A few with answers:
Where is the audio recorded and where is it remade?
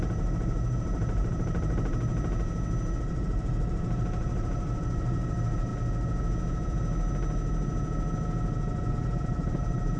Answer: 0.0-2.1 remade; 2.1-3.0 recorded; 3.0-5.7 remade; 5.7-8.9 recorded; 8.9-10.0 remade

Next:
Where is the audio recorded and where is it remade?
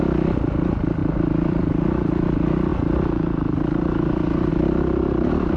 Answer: 0.0-2.7 recorded; 2.7-4.5 remade; 4.5-5.6 recorded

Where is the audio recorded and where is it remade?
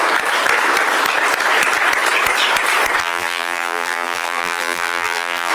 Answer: 0.0-3.0 recorded; 3.0-5.5 remade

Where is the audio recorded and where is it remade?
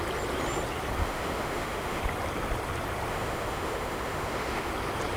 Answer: 0.0-1.0 recorded; 1.0-2.0 remade; 2.0-3.1 recorded; 3.1-4.7 remade; 4.7-5.2 recorded